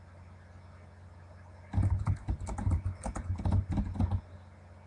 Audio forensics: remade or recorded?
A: recorded